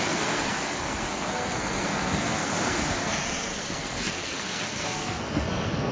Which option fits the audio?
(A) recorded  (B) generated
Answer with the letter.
B